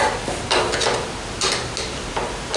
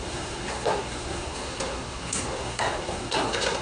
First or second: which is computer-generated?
second